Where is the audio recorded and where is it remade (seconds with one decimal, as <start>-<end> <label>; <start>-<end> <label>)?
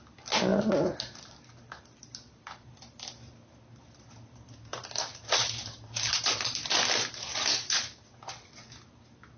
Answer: 0.0-9.4 recorded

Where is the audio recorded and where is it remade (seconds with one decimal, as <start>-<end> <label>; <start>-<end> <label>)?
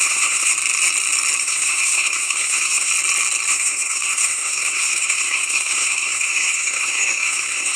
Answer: 0.0-0.5 remade; 0.5-1.4 recorded; 1.4-2.9 remade; 2.9-3.5 recorded; 3.5-7.8 remade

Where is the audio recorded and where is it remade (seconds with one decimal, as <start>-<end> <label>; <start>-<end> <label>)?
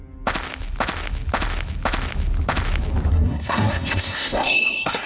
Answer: 0.0-3.1 recorded; 3.1-5.1 remade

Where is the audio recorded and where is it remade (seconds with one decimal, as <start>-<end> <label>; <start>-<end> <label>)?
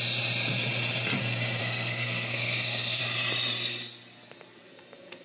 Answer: 0.0-1.6 recorded; 1.6-3.0 remade; 3.0-5.2 recorded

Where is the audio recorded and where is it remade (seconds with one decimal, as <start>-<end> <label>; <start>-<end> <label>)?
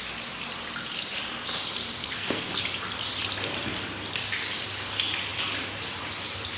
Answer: 0.0-2.0 recorded; 2.0-2.6 remade; 2.6-6.6 recorded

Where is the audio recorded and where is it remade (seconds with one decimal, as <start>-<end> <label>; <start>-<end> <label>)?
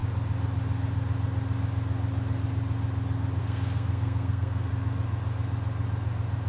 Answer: 0.0-3.4 recorded; 3.4-4.7 remade; 4.7-6.5 recorded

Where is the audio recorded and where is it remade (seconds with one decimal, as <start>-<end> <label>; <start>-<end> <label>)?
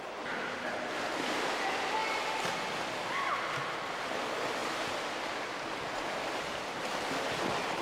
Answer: 0.0-7.8 recorded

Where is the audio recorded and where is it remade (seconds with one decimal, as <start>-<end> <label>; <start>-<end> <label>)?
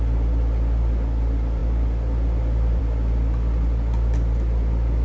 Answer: 0.0-5.0 recorded